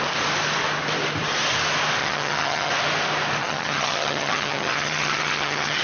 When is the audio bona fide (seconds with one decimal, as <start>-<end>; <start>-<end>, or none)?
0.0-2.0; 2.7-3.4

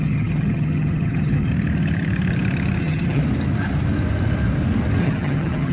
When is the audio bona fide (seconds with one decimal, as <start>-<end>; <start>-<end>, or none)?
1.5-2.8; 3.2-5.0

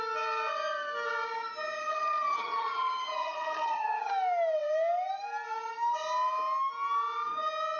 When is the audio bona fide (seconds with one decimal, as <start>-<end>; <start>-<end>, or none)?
0.0-1.9; 4.1-7.8